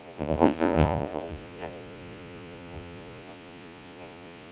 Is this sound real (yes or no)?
no